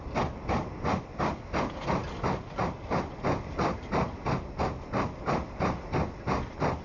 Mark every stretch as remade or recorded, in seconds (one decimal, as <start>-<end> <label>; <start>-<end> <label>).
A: 0.0-6.8 recorded